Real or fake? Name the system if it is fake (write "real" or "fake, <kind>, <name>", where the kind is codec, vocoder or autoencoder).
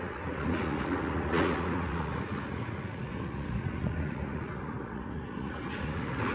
fake, vocoder, Vocos